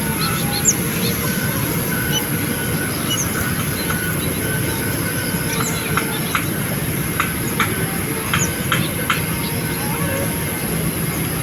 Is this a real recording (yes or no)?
yes